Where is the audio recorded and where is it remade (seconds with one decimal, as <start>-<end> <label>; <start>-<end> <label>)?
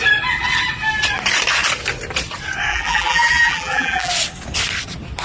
0.0-2.7 recorded; 2.7-4.1 remade; 4.1-5.2 recorded